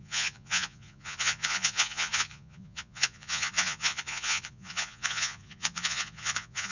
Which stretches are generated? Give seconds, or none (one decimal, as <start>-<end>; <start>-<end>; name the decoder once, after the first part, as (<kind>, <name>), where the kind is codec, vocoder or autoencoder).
0.0-6.7 (vocoder, Vocos)

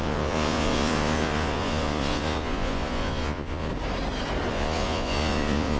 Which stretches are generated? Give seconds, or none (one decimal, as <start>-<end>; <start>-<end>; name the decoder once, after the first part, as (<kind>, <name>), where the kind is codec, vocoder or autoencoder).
0.0-3.7 (vocoder, Vocos); 4.5-5.8

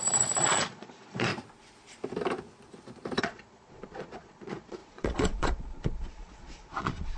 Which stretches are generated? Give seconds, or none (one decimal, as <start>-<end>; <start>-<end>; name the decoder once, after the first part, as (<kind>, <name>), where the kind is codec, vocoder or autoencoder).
0.0-1.3 (vocoder, Vocos); 3.2-7.2

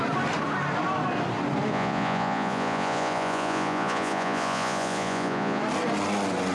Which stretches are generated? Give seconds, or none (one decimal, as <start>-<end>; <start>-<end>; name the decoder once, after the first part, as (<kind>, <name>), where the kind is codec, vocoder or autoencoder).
1.7-5.6 (vocoder, Vocos)